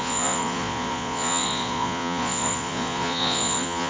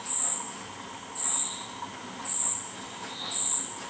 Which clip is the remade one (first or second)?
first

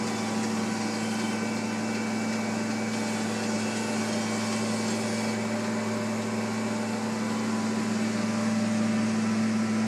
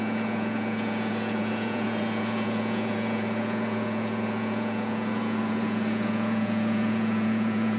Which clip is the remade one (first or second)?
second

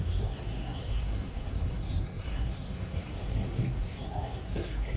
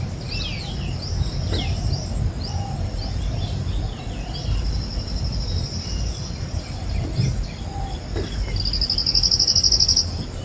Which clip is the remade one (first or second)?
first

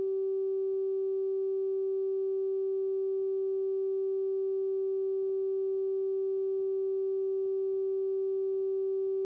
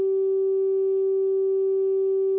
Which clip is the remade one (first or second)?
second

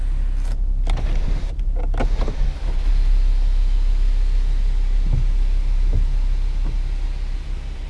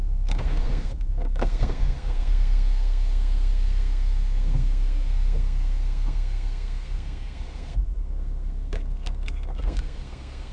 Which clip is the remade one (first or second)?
second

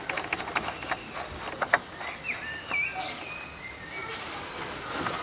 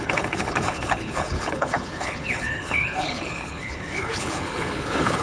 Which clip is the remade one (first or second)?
second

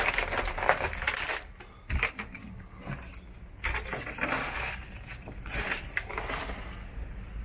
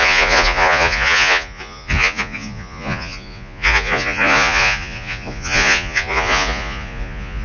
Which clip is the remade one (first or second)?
second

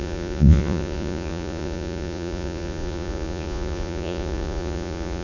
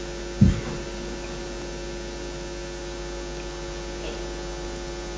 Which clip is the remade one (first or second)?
first